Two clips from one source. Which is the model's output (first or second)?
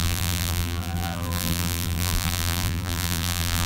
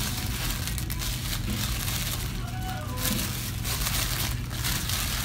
first